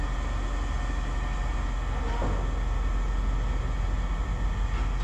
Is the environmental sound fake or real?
real